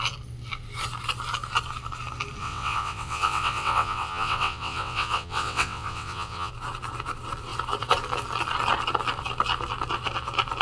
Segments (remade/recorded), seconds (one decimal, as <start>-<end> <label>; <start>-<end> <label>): 0.0-2.4 recorded; 2.4-6.5 remade; 6.5-10.6 recorded